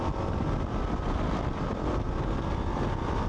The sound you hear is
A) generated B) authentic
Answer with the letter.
B